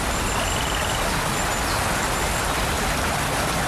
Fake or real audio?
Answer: real